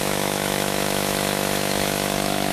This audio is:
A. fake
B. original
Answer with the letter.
A